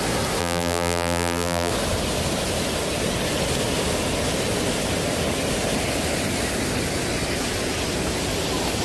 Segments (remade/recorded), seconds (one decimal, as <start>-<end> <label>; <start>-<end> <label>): 0.0-0.4 recorded; 0.4-1.7 remade; 1.7-8.8 recorded

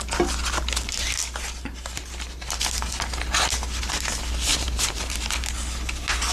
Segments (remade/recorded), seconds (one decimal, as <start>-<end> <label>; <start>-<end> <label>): 0.0-4.5 recorded; 4.5-5.3 remade; 5.3-6.3 recorded

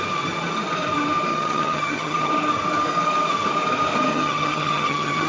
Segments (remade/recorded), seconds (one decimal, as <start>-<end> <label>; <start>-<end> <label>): 0.0-1.3 recorded; 1.3-2.3 remade; 2.3-4.1 recorded; 4.1-5.3 remade

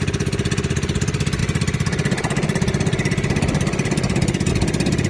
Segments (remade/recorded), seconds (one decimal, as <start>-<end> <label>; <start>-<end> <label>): 0.0-5.1 recorded

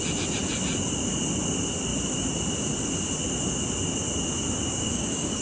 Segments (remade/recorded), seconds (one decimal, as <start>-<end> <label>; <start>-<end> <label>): 0.0-4.8 recorded; 4.8-5.4 remade

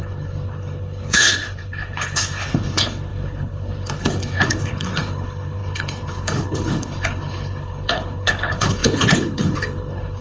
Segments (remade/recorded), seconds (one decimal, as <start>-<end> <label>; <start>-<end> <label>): 0.0-10.2 remade